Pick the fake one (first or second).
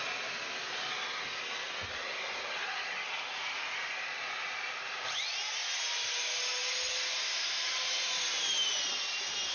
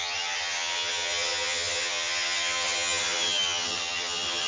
second